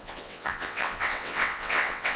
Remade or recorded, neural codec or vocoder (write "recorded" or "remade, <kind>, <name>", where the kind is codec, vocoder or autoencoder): remade, vocoder, WaveNeXt